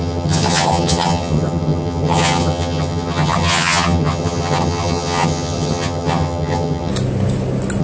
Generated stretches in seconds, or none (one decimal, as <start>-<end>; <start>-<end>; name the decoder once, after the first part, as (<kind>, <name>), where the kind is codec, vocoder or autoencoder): 0.0-6.9 (vocoder, HiFi-GAN)